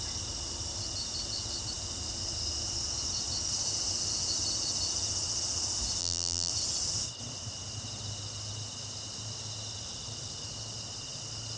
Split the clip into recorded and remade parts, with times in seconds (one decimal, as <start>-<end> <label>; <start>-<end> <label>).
0.0-6.0 recorded; 6.0-6.5 remade; 6.5-11.6 recorded